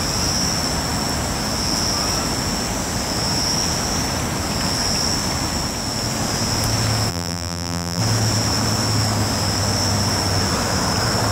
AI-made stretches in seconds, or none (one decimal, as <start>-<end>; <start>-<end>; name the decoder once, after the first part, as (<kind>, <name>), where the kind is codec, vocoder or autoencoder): 7.1-8.0 (vocoder, BigVGAN v2)